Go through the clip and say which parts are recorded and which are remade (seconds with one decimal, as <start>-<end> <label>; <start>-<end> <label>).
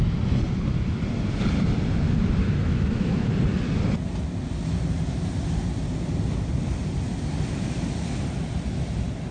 0.0-2.6 recorded; 2.6-3.3 remade; 3.3-9.3 recorded